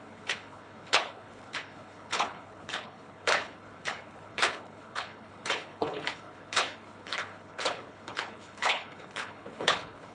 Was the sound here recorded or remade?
remade